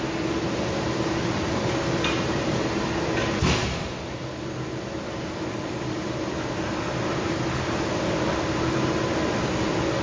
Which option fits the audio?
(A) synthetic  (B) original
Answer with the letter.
B